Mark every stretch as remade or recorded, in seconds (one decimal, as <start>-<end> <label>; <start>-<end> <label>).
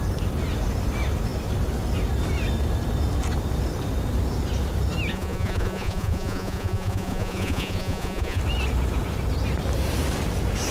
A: 0.0-5.1 recorded; 5.1-8.4 remade; 8.4-10.7 recorded